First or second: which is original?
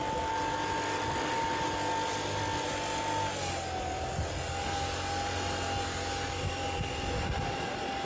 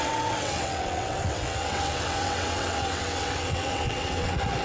first